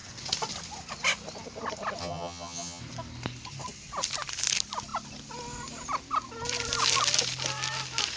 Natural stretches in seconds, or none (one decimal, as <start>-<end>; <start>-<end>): 0.0-2.0; 2.8-8.2